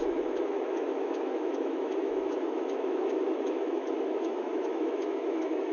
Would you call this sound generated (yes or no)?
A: yes